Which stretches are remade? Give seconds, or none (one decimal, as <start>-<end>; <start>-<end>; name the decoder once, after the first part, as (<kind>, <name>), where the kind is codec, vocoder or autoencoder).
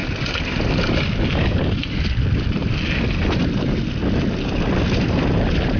1.8-2.6 (vocoder, BigVGAN v2); 5.3-5.8